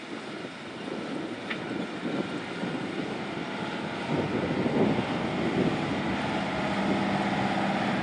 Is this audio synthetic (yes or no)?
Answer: no